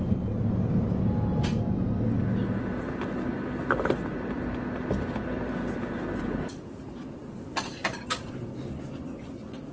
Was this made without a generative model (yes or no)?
yes